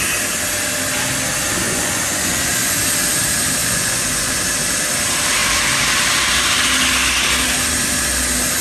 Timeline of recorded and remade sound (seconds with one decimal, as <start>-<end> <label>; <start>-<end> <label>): 0.0-1.6 recorded; 1.6-2.8 remade; 2.8-3.6 recorded; 3.6-4.4 remade; 4.4-8.6 recorded